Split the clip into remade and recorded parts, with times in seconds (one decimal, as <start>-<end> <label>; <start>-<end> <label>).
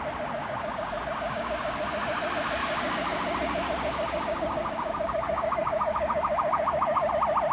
0.0-0.4 recorded; 0.4-1.8 remade; 1.8-2.6 recorded; 2.6-7.1 remade; 7.1-7.5 recorded